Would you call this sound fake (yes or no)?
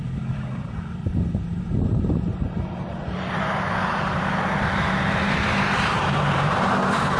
yes